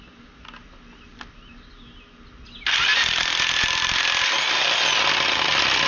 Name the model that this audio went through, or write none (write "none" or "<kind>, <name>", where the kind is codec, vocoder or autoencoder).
none